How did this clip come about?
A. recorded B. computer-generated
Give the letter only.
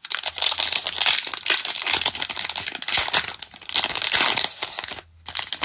A